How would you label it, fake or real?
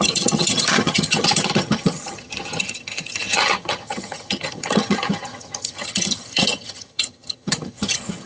fake